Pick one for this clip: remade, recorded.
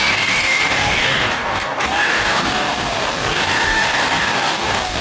remade